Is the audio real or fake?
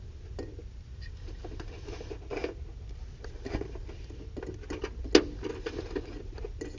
real